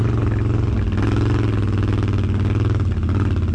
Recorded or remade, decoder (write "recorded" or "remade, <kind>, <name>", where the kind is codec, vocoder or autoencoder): recorded